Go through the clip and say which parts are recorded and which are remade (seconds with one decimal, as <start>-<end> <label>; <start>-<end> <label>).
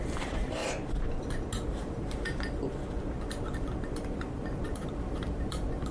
0.0-0.6 remade; 0.6-4.1 recorded; 4.1-5.9 remade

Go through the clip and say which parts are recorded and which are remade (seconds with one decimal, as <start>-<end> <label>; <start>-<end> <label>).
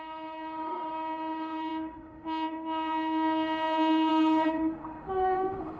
0.0-5.8 remade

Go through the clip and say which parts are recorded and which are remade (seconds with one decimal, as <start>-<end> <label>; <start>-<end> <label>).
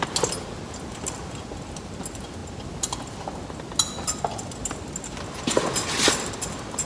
0.0-6.9 recorded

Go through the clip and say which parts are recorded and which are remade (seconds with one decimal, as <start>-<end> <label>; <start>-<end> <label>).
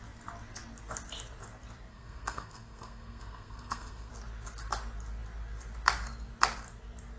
0.0-1.9 recorded; 1.9-4.1 remade; 4.1-7.2 recorded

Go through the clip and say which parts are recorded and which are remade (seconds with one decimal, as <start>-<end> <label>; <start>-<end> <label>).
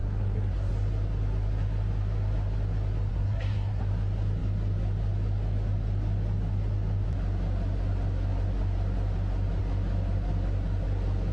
0.0-0.7 remade; 0.7-3.1 recorded; 3.1-3.8 remade; 3.8-11.3 recorded